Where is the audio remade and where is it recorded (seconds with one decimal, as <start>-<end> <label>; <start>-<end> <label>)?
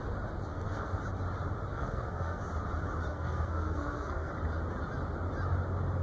0.0-0.5 recorded; 0.5-1.0 remade; 1.0-1.7 recorded; 1.7-2.4 remade; 2.4-3.1 recorded; 3.1-4.3 remade; 4.3-6.0 recorded